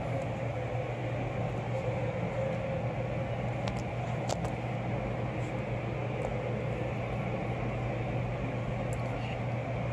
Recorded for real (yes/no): yes